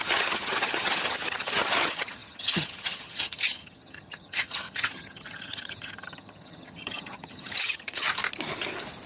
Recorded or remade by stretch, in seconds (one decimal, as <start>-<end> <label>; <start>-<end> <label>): 0.0-8.2 remade; 8.2-9.1 recorded